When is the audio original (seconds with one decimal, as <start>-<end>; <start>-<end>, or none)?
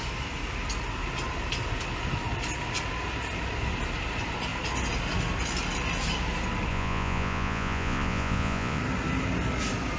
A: 0.0-6.7; 8.8-10.0